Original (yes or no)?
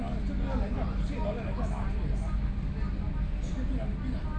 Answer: yes